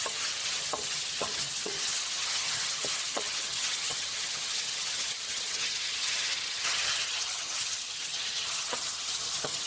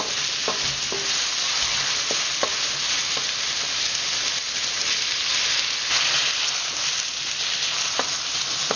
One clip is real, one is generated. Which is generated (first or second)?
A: first